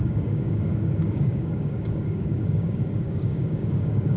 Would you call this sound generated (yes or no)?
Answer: yes